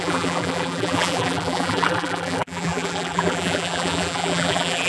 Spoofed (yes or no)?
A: yes